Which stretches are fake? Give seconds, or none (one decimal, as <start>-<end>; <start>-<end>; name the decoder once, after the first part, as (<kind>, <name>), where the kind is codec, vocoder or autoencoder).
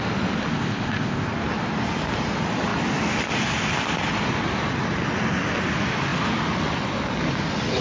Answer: 0.5-1.3 (codec, ZipCodec)